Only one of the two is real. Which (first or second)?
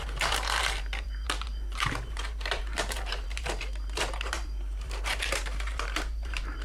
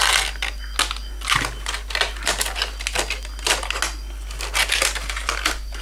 second